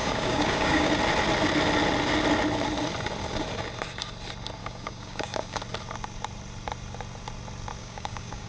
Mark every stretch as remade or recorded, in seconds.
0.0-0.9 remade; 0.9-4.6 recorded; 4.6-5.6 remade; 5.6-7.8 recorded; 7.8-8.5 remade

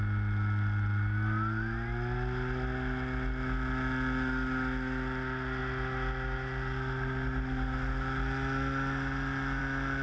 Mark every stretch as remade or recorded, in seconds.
0.0-10.0 recorded

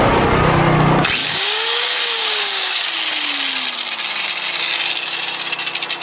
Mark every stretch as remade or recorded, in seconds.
0.0-1.2 recorded; 1.2-2.8 remade; 2.8-6.0 recorded

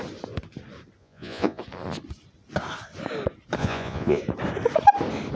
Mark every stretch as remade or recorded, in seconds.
0.0-1.0 recorded; 1.0-1.6 remade; 1.6-3.6 recorded; 3.6-4.2 remade; 4.2-5.4 recorded